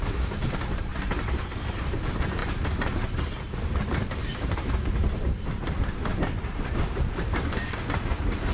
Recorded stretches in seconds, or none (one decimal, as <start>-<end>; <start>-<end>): 0.9-1.9